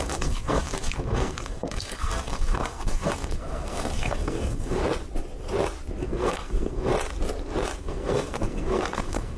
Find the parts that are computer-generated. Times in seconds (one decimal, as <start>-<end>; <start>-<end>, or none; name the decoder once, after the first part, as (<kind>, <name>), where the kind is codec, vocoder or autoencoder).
0.0-4.8 (codec, SNAC); 6.0-6.9; 7.8-9.4

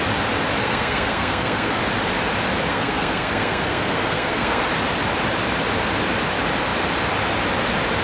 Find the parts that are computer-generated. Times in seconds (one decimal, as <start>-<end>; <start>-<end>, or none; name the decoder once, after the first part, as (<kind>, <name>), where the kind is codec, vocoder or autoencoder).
0.6-1.8 (codec, SNAC); 2.7-4.6